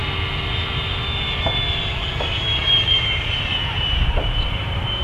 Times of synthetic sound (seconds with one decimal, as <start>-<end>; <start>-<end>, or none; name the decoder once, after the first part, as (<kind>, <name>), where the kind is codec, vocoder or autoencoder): 2.6-5.0 (vocoder, BigVGAN v2)

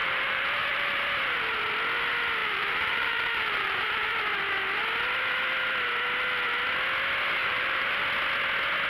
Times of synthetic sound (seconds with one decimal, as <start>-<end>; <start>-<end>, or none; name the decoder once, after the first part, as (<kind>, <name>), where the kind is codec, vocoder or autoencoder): 0.0-1.4 (vocoder, BigVGAN v2); 2.4-4.1; 7.4-8.0

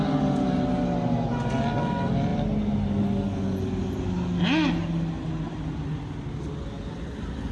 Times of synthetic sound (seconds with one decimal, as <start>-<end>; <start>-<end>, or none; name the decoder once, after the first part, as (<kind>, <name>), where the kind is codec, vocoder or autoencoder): none

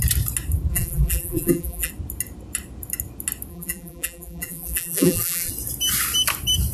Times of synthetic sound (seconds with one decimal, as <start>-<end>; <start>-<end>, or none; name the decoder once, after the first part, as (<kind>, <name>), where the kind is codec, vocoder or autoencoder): 0.7-1.9 (vocoder, BigVGAN v2); 3.5-5.5